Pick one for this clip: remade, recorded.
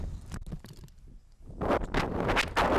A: recorded